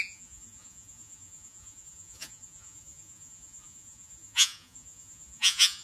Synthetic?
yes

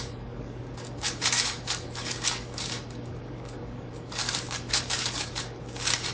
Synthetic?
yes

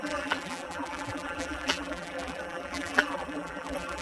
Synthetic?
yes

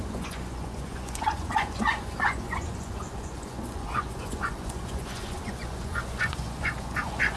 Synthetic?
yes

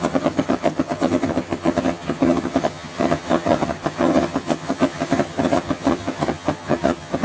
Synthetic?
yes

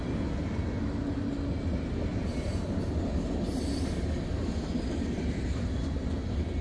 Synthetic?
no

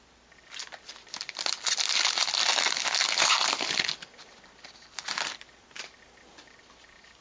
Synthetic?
no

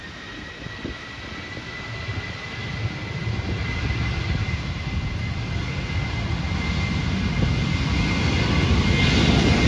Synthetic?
no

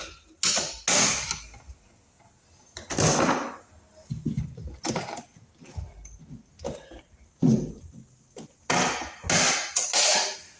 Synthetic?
no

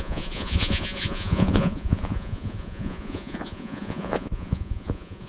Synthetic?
yes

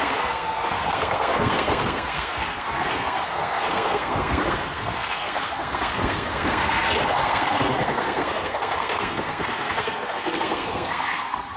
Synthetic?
yes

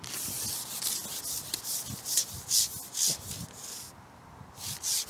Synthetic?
no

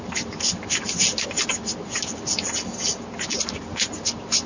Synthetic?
no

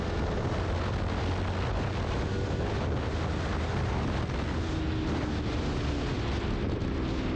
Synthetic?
no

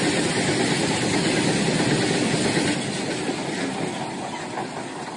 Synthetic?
no